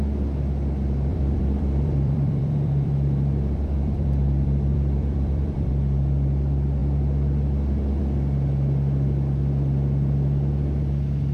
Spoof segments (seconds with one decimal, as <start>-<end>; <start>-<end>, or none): 1.1-5.7